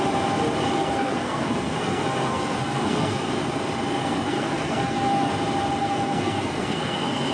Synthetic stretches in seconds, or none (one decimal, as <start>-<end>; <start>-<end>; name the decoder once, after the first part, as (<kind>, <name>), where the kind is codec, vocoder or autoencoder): 0.6-3.3 (codec, SNAC); 4.0-5.3; 5.8-7.3